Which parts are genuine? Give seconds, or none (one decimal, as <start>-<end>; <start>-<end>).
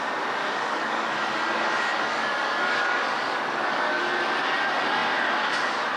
0.0-0.4; 4.0-6.0